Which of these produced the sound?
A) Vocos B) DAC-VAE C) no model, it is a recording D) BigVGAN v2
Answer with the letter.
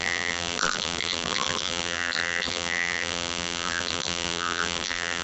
D